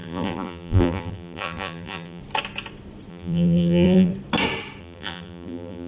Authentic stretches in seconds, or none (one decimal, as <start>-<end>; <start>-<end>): 2.2-3.1; 4.1-4.8

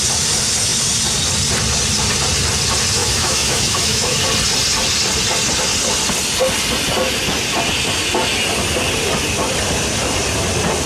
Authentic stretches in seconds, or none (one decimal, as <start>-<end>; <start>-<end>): 0.0-3.0; 4.2-10.9

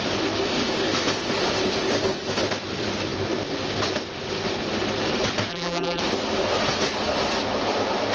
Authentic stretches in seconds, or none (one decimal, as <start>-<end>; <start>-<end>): 0.0-5.5; 6.0-8.1